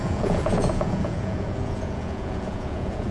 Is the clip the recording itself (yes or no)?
no